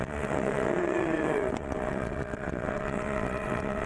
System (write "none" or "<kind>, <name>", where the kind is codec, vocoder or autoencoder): vocoder, WaveNeXt